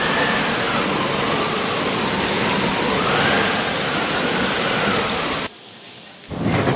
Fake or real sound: real